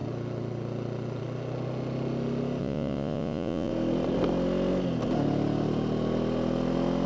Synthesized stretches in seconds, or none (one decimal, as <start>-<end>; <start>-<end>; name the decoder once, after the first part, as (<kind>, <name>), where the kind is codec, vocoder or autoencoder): 2.6-3.7 (vocoder, Vocos)